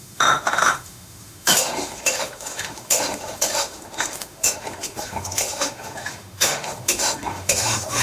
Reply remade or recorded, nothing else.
remade